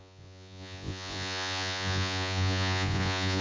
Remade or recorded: remade